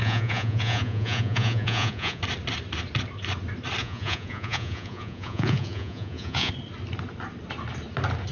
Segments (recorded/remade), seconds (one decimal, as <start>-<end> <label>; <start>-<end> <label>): 0.0-2.2 remade; 2.2-3.8 recorded; 3.8-6.5 remade; 6.5-8.3 recorded